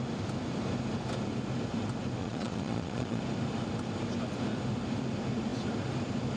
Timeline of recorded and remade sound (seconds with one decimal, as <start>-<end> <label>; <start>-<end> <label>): 0.0-2.2 recorded; 2.2-3.2 remade; 3.2-6.4 recorded

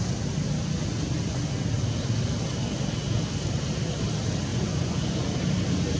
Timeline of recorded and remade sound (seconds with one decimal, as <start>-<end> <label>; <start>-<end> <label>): 0.0-4.5 recorded; 4.5-5.4 remade; 5.4-6.0 recorded

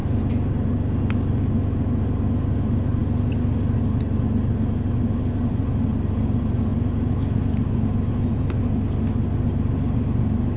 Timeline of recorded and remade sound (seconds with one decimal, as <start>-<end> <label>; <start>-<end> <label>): 0.0-10.6 recorded

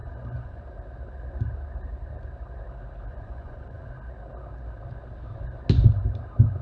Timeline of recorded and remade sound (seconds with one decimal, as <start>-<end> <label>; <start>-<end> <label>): 0.0-0.6 remade; 0.6-3.1 recorded; 3.1-3.9 remade; 3.9-6.6 recorded